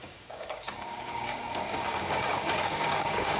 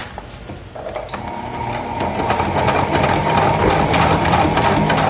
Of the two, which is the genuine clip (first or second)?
second